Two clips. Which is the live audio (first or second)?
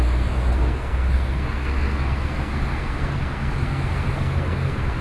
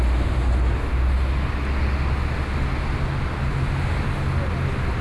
second